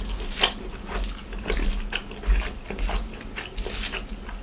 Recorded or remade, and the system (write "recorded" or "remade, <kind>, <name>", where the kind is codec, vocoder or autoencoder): recorded